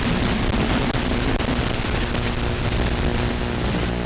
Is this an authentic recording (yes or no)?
yes